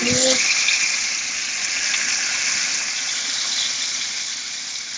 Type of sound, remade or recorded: recorded